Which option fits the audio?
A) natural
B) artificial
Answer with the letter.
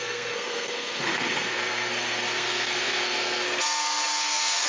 B